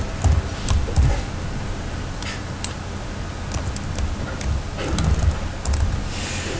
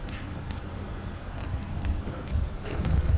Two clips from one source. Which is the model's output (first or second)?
second